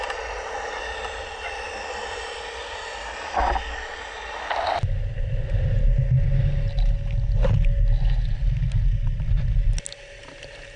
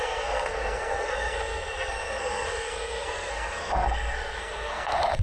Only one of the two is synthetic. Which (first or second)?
second